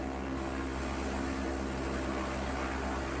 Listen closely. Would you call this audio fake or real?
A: real